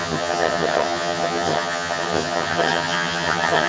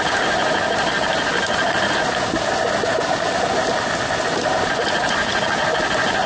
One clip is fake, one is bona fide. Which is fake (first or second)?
first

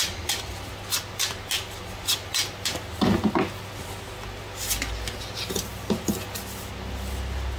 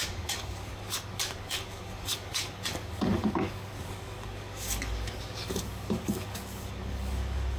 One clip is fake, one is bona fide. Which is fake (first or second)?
second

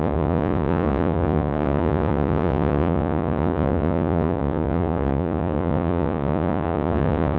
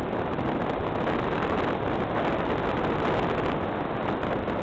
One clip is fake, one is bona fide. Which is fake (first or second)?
first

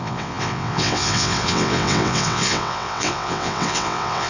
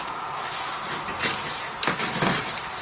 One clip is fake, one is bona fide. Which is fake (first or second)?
first